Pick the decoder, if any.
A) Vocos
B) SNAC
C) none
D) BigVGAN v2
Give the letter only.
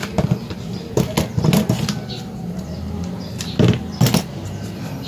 C